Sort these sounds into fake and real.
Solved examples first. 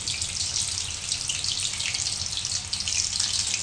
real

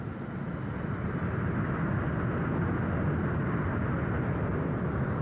real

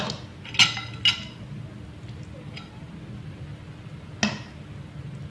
real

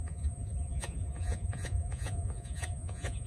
fake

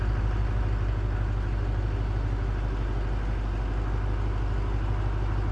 real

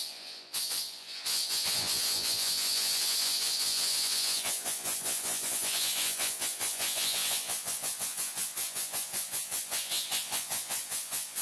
fake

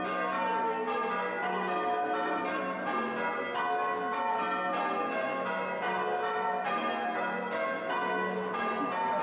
real